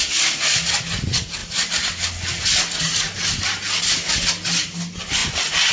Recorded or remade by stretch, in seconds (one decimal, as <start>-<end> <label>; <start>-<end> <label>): 0.0-5.7 recorded